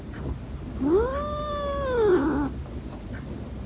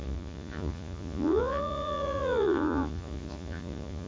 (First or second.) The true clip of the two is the first